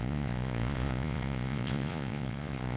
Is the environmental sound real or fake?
fake